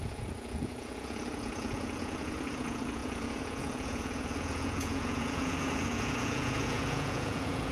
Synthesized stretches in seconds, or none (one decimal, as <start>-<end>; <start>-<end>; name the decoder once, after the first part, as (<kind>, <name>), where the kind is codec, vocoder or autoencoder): 0.0-7.7 (vocoder, Vocos)